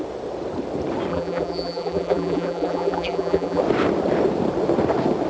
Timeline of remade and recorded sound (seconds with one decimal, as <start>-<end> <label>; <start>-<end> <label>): 0.0-1.1 recorded; 1.1-3.6 remade; 3.6-5.3 recorded